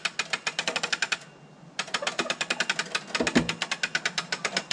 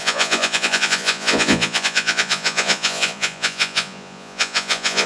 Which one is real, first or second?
first